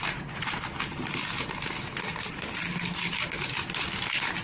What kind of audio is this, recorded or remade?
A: recorded